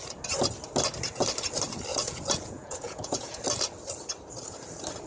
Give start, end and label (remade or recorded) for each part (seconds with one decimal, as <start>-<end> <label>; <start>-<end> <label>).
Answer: 0.0-1.9 recorded; 1.9-3.4 remade; 3.4-5.1 recorded